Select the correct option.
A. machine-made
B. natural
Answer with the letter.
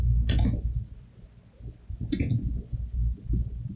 B